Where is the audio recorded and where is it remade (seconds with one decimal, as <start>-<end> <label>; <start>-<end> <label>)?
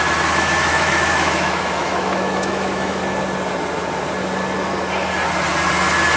0.0-0.7 recorded; 0.7-3.0 remade; 3.0-6.2 recorded